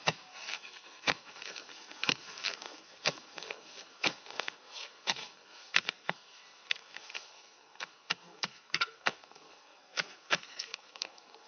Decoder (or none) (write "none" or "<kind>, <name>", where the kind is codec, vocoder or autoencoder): codec, SNAC